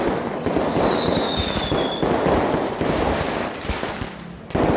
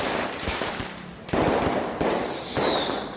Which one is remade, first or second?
second